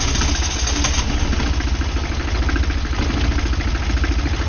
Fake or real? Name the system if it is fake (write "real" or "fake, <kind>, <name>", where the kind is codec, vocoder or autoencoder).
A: real